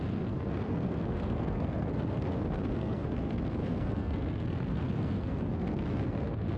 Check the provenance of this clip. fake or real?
fake